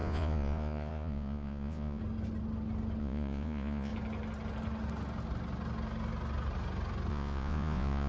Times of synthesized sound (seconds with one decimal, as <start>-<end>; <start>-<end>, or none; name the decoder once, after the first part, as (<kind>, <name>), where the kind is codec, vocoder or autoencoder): 0.0-2.0 (vocoder, Vocos); 3.0-3.9; 7.1-8.1